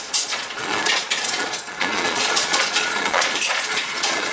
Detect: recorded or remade remade